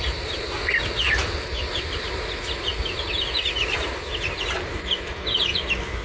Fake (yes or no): no